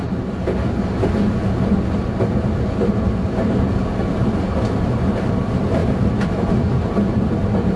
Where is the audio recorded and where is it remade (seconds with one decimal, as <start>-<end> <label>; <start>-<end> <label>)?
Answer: 0.0-4.7 recorded; 4.7-7.8 remade